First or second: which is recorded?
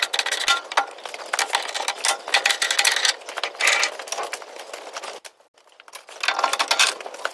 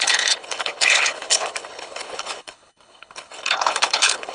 first